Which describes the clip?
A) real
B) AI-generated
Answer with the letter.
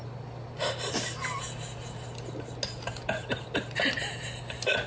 A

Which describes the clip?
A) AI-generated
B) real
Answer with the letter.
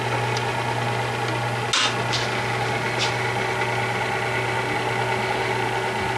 B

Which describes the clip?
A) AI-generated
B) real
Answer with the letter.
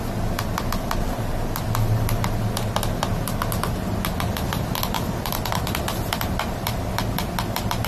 B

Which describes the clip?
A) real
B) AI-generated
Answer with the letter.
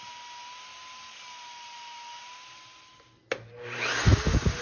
A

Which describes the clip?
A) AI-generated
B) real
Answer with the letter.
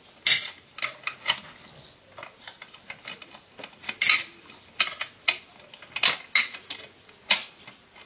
B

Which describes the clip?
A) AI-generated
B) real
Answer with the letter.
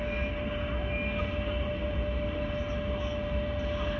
B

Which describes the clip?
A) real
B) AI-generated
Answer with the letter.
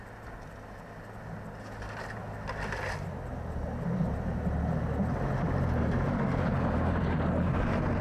A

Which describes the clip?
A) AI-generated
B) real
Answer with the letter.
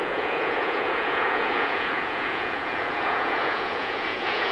A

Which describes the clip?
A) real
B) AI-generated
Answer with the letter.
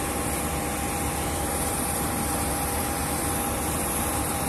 A